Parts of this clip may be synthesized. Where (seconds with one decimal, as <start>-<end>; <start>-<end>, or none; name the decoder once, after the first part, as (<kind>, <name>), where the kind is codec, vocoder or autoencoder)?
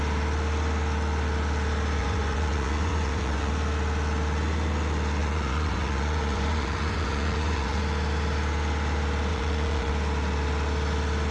2.0-3.5 (vocoder, Vocos); 5.2-7.8; 9.3-9.9